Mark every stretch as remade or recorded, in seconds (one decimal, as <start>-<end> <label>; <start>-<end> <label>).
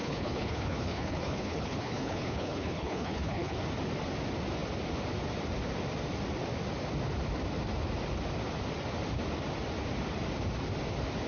0.0-3.6 remade; 3.6-11.3 recorded